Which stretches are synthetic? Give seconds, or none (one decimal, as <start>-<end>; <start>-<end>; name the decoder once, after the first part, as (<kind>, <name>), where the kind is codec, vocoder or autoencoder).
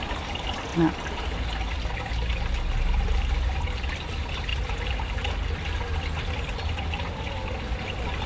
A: none